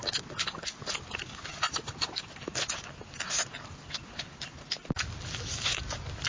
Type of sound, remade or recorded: recorded